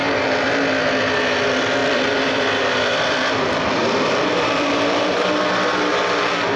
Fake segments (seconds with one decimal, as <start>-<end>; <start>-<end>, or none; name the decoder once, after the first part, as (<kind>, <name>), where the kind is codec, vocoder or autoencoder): 0.0-1.2 (vocoder, BigVGAN v2); 1.8-5.3